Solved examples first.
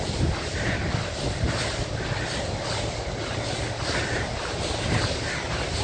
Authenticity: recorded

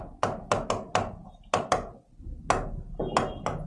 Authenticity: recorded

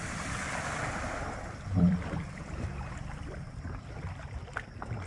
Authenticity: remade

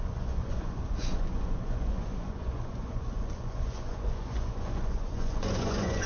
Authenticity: remade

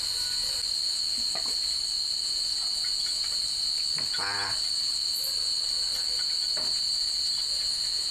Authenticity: recorded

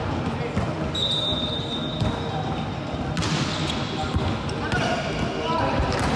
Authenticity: recorded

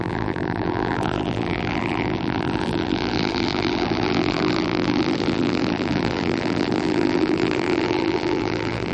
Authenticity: remade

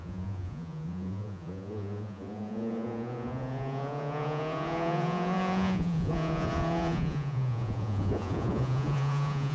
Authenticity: remade